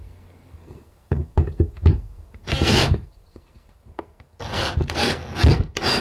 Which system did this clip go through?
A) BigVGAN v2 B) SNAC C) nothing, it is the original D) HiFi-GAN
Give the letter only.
B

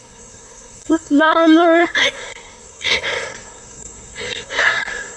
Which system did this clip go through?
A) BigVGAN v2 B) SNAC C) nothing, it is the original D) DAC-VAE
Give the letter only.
B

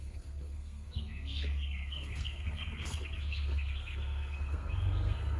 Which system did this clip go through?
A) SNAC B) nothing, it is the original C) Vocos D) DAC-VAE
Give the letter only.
A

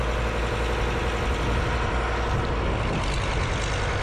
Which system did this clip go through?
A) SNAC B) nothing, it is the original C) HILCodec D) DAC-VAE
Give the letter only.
B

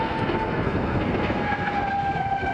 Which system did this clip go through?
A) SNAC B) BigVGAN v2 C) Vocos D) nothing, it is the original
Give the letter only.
A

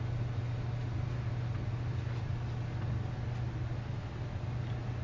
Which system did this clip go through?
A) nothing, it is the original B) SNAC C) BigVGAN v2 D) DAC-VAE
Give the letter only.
A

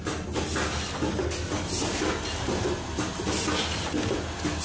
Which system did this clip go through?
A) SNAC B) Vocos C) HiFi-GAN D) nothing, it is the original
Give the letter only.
D